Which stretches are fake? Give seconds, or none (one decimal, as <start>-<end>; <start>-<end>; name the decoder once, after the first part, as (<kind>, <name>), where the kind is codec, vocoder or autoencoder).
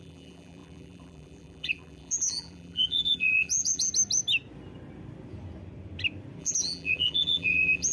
0.0-3.9 (vocoder, BigVGAN v2); 6.4-7.9